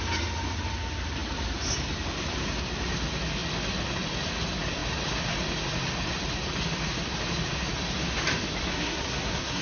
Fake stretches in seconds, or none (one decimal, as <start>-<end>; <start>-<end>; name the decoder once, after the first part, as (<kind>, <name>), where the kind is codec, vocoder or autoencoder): 8.7-9.6 (codec, SNAC)